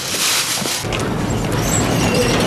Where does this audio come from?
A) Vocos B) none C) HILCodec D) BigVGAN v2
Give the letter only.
B